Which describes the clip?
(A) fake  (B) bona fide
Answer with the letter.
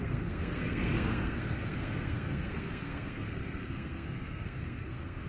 A